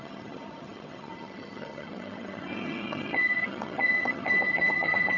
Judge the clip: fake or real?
fake